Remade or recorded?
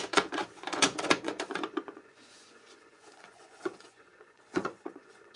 remade